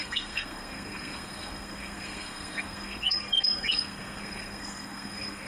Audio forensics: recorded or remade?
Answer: remade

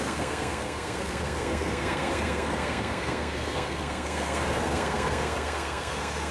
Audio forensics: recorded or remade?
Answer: remade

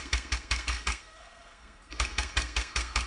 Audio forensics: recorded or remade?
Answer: remade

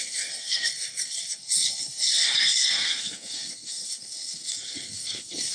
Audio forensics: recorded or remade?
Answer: remade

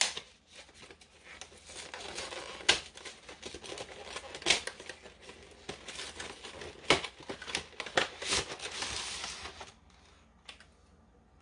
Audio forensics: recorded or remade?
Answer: recorded